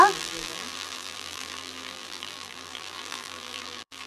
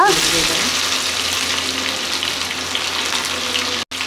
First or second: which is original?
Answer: second